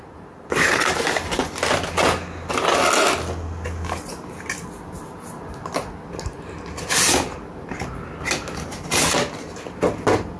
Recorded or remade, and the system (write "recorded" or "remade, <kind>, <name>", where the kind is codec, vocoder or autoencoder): recorded